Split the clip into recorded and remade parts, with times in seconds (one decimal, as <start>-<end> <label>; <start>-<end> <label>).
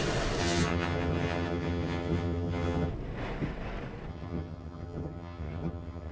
0.0-0.4 recorded; 0.4-2.9 remade; 2.9-4.1 recorded; 4.1-6.1 remade